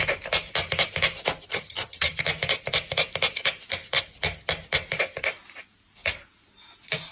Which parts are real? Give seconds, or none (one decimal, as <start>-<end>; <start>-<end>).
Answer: 0.0-1.5; 2.2-7.1